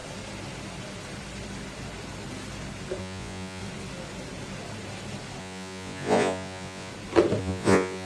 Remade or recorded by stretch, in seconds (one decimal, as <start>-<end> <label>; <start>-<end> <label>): 0.0-3.0 recorded; 3.0-3.6 remade; 3.6-5.4 recorded; 5.4-6.9 remade; 6.9-7.4 recorded; 7.4-8.0 remade